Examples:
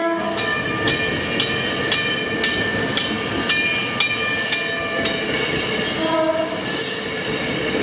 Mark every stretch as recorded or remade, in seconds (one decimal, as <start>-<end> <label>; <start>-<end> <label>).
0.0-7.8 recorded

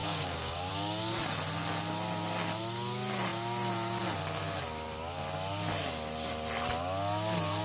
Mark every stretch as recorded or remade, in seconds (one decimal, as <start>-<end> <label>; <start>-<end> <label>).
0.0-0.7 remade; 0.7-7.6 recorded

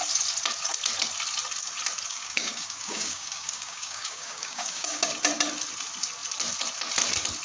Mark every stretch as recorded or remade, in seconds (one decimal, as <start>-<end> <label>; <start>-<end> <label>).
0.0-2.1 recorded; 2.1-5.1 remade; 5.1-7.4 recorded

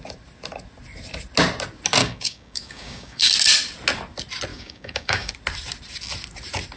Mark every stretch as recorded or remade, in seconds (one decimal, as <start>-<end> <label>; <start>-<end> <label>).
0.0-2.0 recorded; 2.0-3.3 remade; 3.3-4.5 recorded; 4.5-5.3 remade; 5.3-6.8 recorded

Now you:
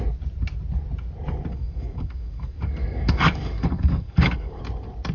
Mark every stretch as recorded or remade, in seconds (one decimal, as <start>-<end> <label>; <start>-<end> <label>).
0.0-1.5 recorded; 1.5-4.6 remade; 4.6-5.1 recorded

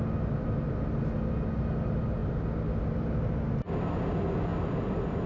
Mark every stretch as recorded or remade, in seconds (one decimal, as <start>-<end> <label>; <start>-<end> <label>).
0.0-5.3 recorded

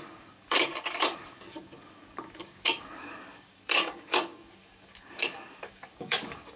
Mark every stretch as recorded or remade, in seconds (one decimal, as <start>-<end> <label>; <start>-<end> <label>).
0.0-6.6 remade

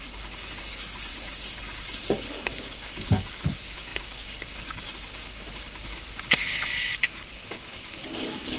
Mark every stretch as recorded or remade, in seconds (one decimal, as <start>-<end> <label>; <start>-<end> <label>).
0.0-8.6 remade